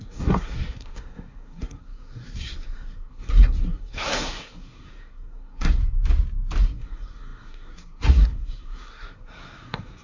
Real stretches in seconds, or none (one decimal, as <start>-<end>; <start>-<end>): 5.8-6.6